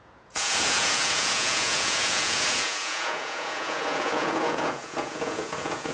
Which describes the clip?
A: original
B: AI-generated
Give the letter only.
B